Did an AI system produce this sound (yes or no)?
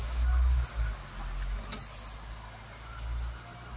no